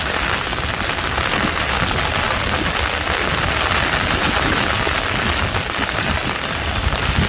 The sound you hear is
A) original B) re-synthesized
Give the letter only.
A